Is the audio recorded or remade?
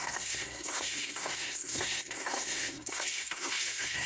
remade